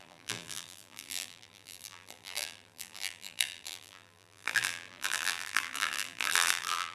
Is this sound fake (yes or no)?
yes